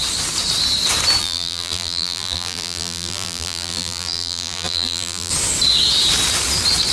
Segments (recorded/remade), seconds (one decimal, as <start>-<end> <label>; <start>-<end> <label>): 0.0-1.2 recorded; 1.2-5.3 remade; 5.3-6.9 recorded